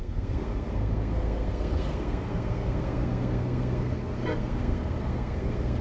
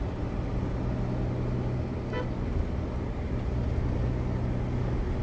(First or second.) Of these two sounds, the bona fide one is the second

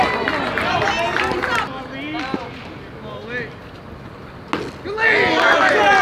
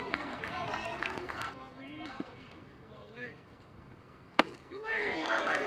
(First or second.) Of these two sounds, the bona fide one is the first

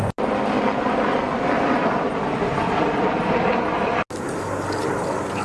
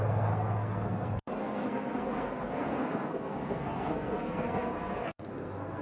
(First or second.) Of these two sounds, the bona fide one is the first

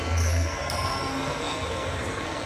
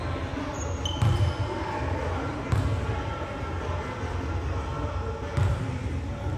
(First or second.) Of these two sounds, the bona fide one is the second